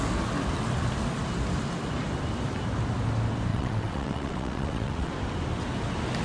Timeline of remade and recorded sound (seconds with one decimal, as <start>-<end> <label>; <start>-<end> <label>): 0.0-3.5 recorded; 3.5-5.1 remade; 5.1-6.2 recorded